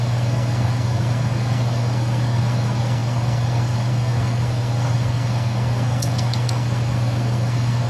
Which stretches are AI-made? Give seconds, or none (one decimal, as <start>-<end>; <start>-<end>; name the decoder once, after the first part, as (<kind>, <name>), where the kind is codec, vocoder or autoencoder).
0.0-7.9 (codec, SNAC)